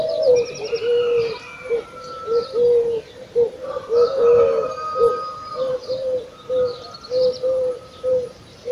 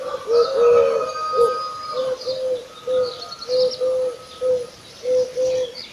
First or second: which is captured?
second